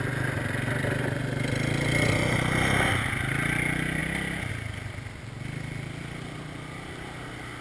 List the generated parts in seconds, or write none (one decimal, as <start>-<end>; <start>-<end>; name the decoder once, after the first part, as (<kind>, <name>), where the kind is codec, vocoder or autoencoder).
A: none